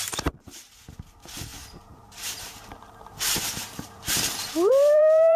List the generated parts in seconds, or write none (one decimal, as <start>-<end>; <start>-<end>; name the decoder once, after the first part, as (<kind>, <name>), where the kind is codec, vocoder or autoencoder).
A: 0.0-5.4 (vocoder, BigVGAN v2)